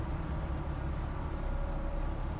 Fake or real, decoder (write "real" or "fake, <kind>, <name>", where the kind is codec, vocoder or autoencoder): fake, vocoder, BigVGAN v2